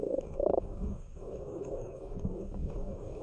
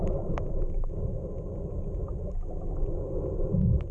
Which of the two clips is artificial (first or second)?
first